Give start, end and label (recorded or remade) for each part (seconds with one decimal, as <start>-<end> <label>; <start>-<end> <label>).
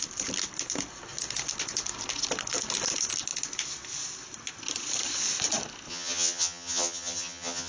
0.0-5.9 recorded; 5.9-7.7 remade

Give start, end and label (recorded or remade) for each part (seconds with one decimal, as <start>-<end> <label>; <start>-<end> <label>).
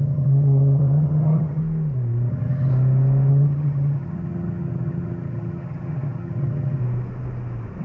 0.0-1.6 remade; 1.6-2.3 recorded; 2.3-2.7 remade; 2.7-3.3 recorded; 3.3-6.8 remade; 6.8-7.8 recorded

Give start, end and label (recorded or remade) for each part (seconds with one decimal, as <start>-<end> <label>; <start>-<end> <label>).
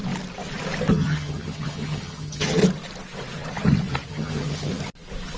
0.0-0.9 recorded; 0.9-2.6 remade; 2.6-4.1 recorded; 4.1-4.7 remade; 4.7-5.4 recorded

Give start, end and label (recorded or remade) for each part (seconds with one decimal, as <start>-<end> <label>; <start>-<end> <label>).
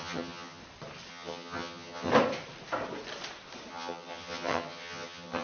0.0-0.6 remade; 0.6-1.1 recorded; 1.1-2.1 remade; 2.1-3.7 recorded; 3.7-5.4 remade